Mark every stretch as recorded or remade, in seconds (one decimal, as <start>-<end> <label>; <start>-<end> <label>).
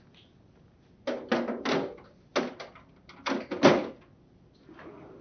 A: 0.0-5.2 recorded